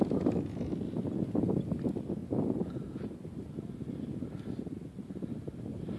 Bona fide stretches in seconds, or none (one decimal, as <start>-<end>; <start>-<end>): 0.0-6.0

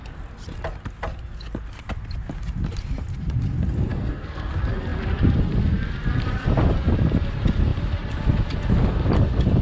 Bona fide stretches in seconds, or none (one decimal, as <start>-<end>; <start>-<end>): 0.0-3.9; 4.5-9.6

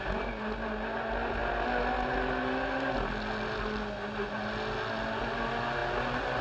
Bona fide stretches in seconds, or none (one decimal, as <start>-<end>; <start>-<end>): 0.0-6.4

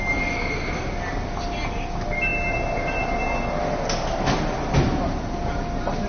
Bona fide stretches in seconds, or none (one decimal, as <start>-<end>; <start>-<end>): 0.0-6.1

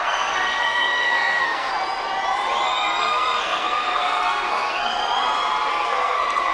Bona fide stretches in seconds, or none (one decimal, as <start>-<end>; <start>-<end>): 1.7-3.0; 5.0-5.7

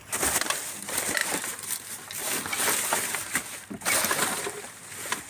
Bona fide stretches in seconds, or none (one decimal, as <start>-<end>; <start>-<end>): 0.0-5.3